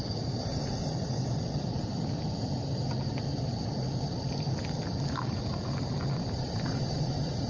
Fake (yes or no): no